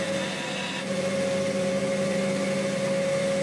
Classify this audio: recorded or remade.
recorded